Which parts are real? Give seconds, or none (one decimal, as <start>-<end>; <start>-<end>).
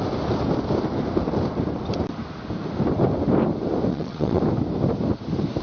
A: 0.0-3.9; 4.4-5.6